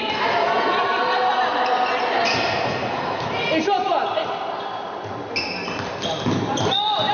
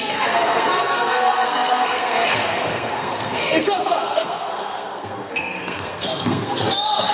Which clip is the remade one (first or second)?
second